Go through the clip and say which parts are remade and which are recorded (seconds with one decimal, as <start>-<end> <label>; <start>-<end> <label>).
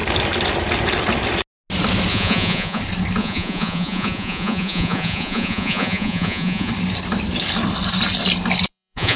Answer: 0.0-2.1 recorded; 2.1-2.8 remade; 2.8-3.2 recorded; 3.2-6.7 remade; 6.7-8.7 recorded; 8.7-9.2 remade